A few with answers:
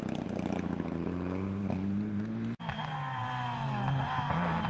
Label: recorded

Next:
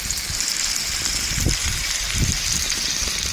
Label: recorded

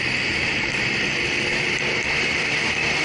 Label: recorded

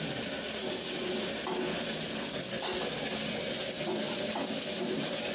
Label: recorded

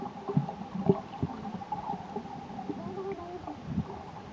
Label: recorded